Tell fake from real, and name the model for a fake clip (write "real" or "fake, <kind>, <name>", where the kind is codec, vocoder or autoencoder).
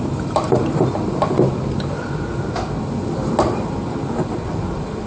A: fake, vocoder, BigVGAN v2